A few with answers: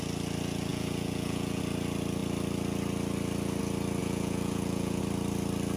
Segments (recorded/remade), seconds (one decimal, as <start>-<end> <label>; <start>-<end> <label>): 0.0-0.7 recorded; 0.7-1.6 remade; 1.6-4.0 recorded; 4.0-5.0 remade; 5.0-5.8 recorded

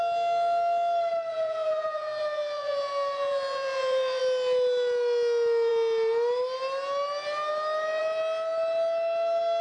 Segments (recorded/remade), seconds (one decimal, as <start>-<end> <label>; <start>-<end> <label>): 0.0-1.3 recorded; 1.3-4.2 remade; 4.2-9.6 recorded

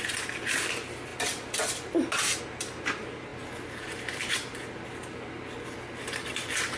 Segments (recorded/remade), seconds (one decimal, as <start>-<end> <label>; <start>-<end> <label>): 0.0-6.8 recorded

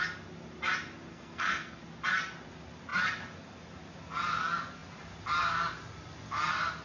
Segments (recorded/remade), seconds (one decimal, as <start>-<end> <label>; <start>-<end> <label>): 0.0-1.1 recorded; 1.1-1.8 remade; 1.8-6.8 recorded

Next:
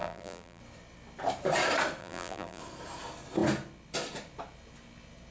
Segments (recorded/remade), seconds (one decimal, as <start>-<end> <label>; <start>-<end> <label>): 0.0-0.6 remade; 0.6-2.0 recorded; 2.0-2.6 remade; 2.6-5.3 recorded